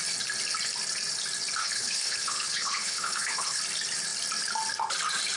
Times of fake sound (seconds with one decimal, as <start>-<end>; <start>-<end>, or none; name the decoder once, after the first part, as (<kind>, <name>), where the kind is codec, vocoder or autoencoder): 1.6-3.6 (codec, HILCodec)